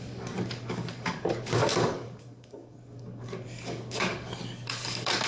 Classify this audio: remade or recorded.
remade